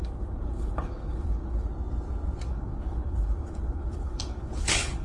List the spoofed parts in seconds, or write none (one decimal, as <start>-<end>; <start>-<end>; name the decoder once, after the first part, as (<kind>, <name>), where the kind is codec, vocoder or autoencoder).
0.0-1.7 (codec, HILCodec); 2.5-5.0